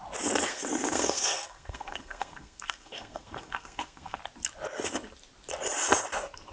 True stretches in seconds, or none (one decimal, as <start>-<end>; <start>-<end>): 0.0-0.5; 4.2-6.5